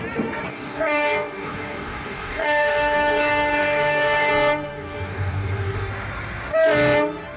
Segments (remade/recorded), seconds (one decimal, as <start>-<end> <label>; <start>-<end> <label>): 0.0-0.5 recorded; 0.5-4.3 remade; 4.3-4.7 recorded; 4.7-5.9 remade; 5.9-7.4 recorded